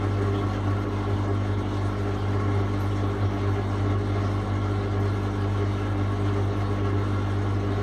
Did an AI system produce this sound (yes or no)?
no